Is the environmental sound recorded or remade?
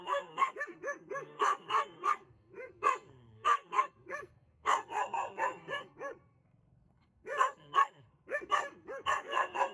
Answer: remade